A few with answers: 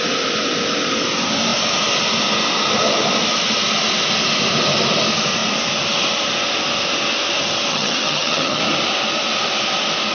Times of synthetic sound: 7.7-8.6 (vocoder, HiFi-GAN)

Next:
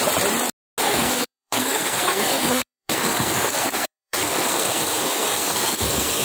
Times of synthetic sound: 0.8-6.2 (codec, SNAC)

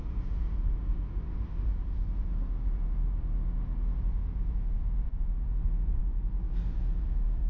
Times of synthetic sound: 0.0-3.4 (vocoder, BigVGAN v2); 4.0-7.5